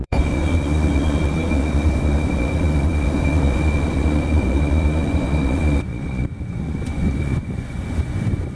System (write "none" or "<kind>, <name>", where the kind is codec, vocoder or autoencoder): vocoder, Vocos